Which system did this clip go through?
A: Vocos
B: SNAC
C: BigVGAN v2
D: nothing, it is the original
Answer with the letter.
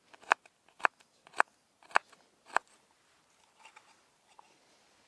D